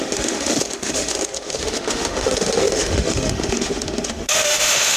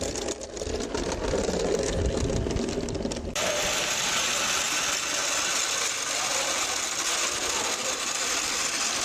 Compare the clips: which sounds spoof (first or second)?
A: first